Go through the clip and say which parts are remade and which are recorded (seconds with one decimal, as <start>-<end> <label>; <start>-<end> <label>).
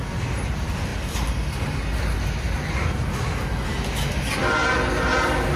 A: 0.0-5.6 recorded